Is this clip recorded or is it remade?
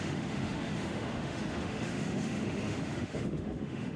remade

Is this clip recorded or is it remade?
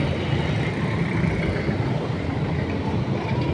recorded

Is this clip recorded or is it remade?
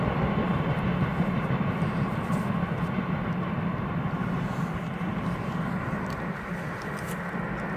recorded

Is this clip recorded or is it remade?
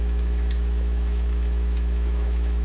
remade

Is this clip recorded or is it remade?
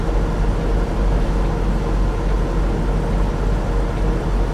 recorded